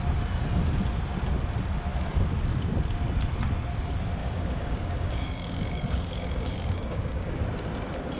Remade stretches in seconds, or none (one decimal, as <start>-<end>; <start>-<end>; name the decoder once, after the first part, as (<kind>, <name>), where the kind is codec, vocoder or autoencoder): 4.2-7.4 (codec, DAC)